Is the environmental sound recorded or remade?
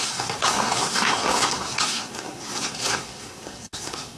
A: remade